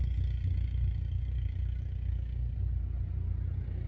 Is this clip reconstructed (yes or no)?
no